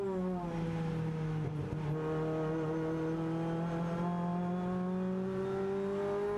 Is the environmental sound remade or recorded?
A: recorded